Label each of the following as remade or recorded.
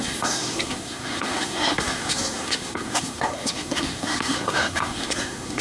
remade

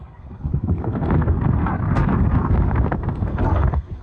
remade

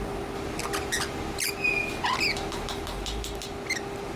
recorded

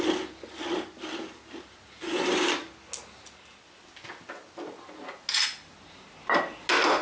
recorded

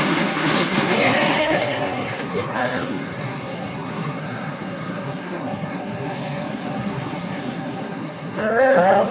remade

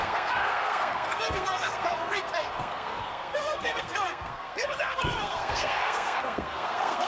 remade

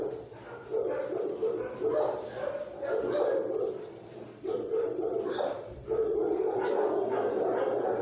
recorded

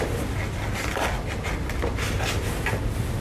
recorded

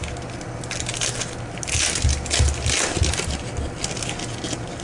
recorded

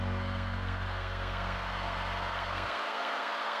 remade